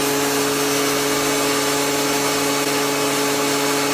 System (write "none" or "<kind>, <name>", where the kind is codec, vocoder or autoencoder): none